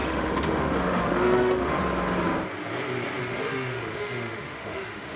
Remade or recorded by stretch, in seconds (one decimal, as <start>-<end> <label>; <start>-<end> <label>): 0.0-1.8 remade; 1.8-3.2 recorded; 3.2-5.2 remade